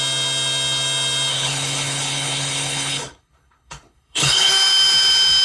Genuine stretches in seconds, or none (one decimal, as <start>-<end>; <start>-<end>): 0.0-1.3; 4.5-5.4